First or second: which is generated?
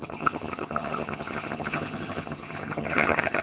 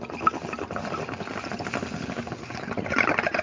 first